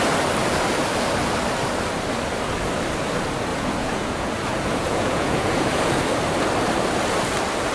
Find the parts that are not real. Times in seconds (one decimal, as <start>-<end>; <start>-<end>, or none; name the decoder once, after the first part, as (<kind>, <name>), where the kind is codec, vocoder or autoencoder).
3.5-6.0 (vocoder, Vocos)